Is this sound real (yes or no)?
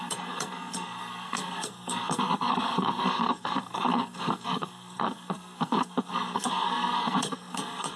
no